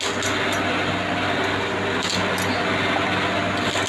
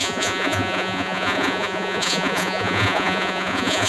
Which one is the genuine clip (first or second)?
first